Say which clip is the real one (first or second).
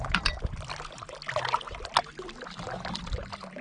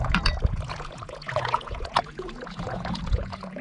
first